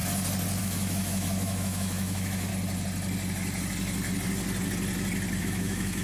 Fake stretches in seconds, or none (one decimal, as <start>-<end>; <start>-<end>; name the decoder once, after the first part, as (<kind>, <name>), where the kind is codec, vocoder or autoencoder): 0.6-2.5 (autoencoder, DAC-VAE); 5.4-6.0